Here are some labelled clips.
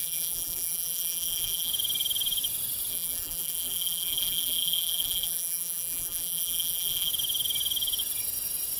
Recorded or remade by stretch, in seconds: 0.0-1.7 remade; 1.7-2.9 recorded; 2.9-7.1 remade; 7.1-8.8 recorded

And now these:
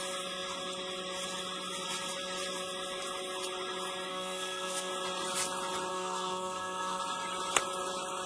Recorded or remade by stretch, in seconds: 0.0-4.1 recorded; 4.1-4.9 remade; 4.9-5.9 recorded; 5.9-7.0 remade; 7.0-8.3 recorded

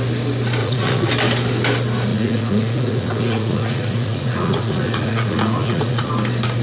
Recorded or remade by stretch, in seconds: 0.0-0.6 recorded; 0.6-1.1 remade; 1.1-2.1 recorded; 2.1-6.1 remade; 6.1-6.6 recorded

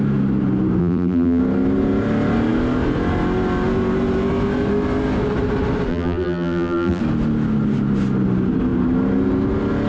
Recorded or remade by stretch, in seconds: 0.0-0.8 recorded; 0.8-1.4 remade; 1.4-5.9 recorded; 5.9-7.0 remade; 7.0-9.9 recorded

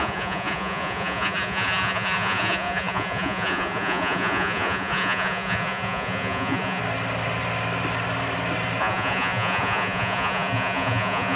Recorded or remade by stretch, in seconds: 0.0-6.8 remade; 6.8-8.8 recorded; 8.8-11.4 remade

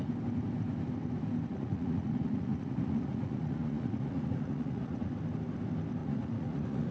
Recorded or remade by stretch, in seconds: 0.0-1.5 recorded; 1.5-5.1 remade; 5.1-6.0 recorded; 6.0-6.9 remade